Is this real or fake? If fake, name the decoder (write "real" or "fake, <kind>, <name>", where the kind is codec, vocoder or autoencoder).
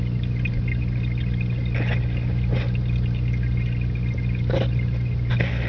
real